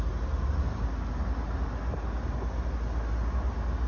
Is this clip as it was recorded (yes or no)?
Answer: yes